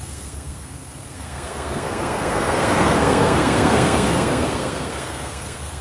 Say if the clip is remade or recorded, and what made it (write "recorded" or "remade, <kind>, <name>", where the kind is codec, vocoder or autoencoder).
remade, codec, SNAC